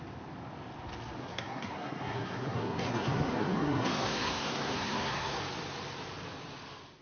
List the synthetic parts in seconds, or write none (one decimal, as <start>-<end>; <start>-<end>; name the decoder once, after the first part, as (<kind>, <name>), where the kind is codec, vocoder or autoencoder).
1.2-5.4 (codec, SNAC)